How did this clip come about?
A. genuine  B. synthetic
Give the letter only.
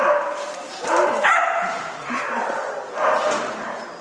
B